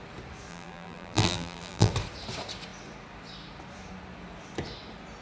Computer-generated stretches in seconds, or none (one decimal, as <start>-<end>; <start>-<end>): 0.5-1.9